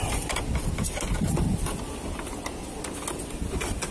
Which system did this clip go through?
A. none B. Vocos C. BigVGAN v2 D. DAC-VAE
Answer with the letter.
A